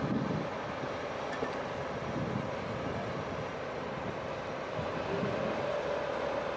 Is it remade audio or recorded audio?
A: recorded